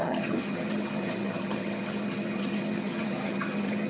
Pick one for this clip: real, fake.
fake